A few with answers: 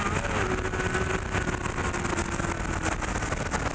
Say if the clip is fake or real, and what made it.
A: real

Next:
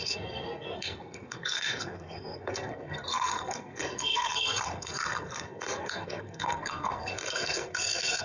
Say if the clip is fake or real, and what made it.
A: fake, codec, SNAC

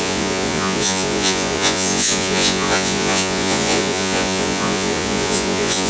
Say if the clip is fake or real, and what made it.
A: fake, vocoder, Vocos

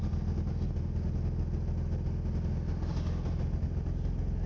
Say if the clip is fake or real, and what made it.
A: real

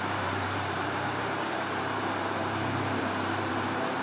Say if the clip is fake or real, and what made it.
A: fake, vocoder, BigVGAN v2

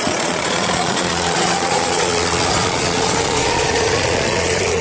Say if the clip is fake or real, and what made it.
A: fake, vocoder, Vocos